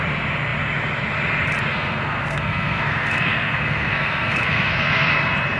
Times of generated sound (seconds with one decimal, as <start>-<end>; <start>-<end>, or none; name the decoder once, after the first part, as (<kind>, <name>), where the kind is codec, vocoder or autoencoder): 1.7-5.1 (codec, SNAC)